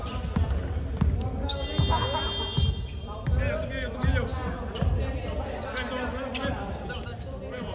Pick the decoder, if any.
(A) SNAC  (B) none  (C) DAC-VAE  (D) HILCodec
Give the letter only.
B